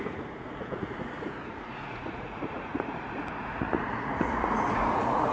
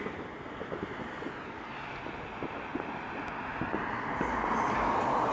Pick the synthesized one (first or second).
first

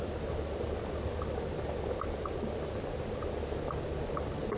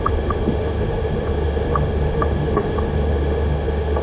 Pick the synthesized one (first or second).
second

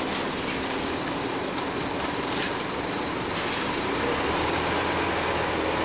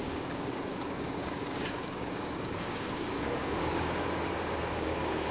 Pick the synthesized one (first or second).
second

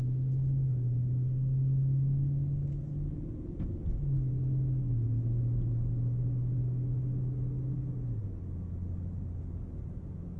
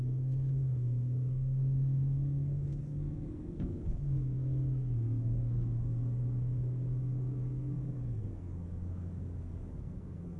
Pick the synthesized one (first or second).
second